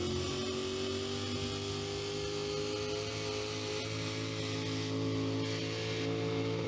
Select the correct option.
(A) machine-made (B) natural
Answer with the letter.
B